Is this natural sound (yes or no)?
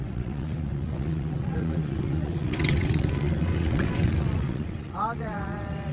no